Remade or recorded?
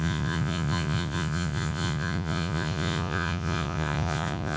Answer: remade